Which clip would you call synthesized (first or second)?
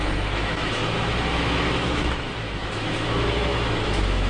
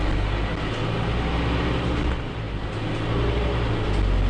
first